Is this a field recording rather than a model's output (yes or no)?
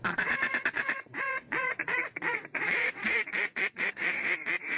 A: no